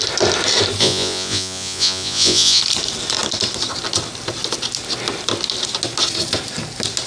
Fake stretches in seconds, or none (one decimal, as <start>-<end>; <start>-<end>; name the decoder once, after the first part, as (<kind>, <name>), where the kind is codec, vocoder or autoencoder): 0.8-2.6 (vocoder, Vocos)